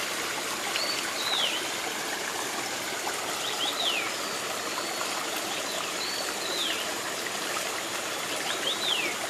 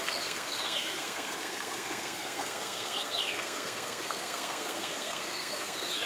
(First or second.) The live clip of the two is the first